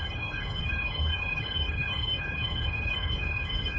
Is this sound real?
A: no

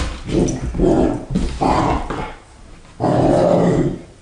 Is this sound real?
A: yes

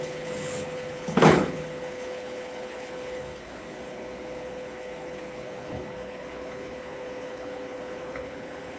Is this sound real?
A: no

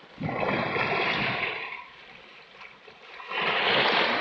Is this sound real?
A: yes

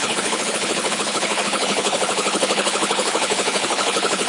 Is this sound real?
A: no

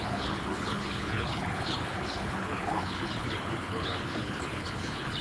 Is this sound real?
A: no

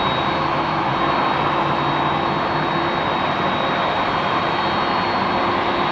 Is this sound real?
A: yes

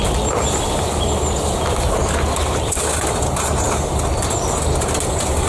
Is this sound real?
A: yes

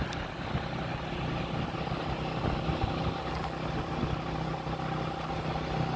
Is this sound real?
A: yes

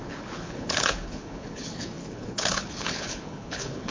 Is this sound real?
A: no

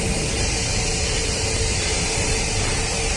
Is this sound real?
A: yes